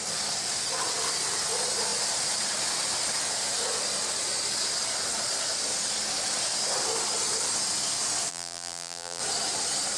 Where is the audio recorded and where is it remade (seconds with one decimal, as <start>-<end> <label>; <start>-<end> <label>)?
0.0-8.3 recorded; 8.3-9.2 remade; 9.2-10.0 recorded